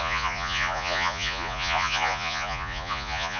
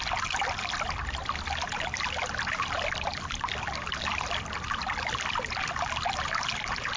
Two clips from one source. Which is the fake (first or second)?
first